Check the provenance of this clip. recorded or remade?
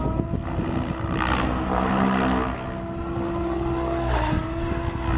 recorded